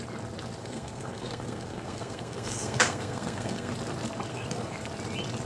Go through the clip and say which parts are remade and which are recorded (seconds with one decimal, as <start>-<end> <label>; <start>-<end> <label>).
0.0-0.6 recorded; 0.6-3.7 remade; 3.7-4.3 recorded; 4.3-4.9 remade; 4.9-5.5 recorded